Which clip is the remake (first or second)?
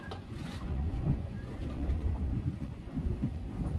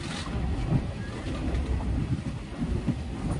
first